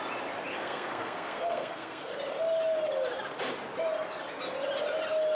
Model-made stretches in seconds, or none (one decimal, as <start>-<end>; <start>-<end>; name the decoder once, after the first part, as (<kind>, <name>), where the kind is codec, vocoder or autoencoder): 0.5-2.1 (codec, SNAC)